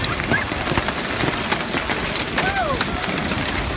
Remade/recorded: recorded